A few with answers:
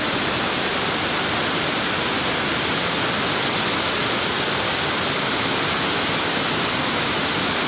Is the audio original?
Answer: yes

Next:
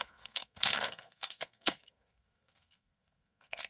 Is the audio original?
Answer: no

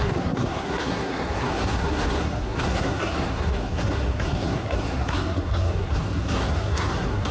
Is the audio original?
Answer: no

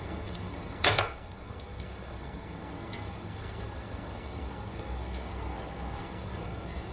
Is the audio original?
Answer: no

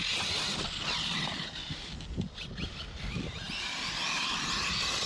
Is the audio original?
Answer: yes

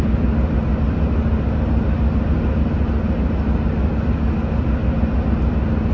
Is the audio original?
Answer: yes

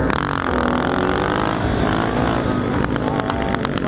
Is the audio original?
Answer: yes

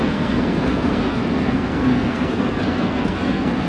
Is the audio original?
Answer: no